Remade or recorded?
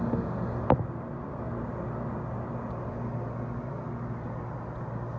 recorded